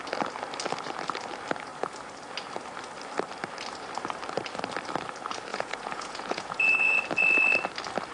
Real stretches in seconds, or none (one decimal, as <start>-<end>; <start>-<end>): 0.0-5.5; 7.0-8.1

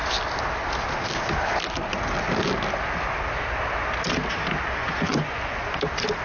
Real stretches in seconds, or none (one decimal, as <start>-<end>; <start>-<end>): 0.0-4.8; 5.7-6.2